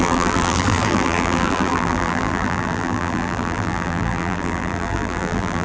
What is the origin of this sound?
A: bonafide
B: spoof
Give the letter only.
B